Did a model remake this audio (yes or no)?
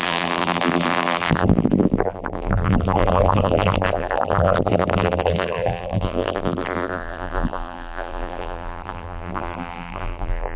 yes